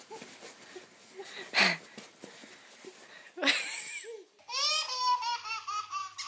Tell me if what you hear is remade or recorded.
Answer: recorded